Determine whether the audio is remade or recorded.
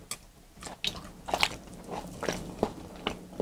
recorded